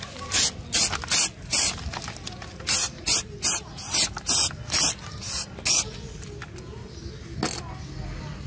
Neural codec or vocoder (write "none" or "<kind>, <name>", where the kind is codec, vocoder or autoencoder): none